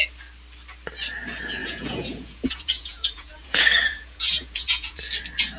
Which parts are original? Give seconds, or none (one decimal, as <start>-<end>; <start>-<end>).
0.0-1.6; 5.0-5.6